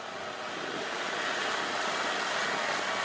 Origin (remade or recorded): recorded